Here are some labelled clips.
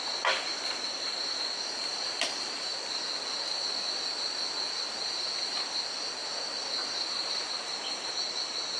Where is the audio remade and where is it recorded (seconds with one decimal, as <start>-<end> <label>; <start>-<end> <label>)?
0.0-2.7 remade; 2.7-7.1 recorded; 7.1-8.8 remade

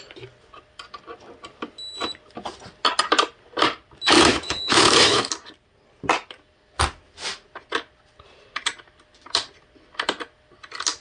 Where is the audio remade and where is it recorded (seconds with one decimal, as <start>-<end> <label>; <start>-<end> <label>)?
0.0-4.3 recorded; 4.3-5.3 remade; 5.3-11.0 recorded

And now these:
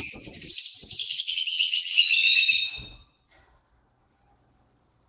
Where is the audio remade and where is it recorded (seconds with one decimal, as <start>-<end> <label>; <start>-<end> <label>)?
0.0-1.0 recorded; 1.0-2.4 remade; 2.4-5.1 recorded

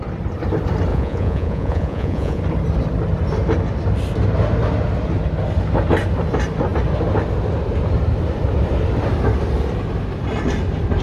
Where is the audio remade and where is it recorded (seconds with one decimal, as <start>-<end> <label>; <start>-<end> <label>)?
0.0-0.9 recorded; 0.9-2.4 remade; 2.4-11.0 recorded

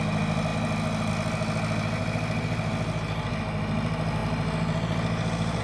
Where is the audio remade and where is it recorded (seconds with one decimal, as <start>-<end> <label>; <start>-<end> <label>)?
0.0-2.0 recorded; 2.0-3.3 remade; 3.3-4.2 recorded; 4.2-5.6 remade